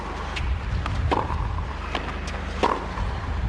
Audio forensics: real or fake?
real